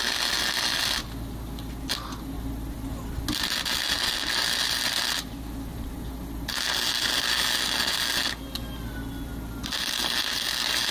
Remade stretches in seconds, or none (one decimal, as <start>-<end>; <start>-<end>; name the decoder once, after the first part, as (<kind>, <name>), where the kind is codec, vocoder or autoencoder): none